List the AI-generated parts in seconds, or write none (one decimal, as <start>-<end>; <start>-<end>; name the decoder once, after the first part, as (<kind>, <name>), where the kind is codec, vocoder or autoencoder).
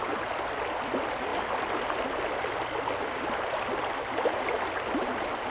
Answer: none